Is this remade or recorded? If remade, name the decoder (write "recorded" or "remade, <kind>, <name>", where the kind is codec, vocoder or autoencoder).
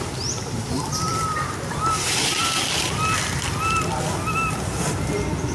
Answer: recorded